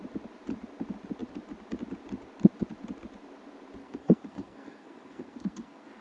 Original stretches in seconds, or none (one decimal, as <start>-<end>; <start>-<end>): 0.0-3.8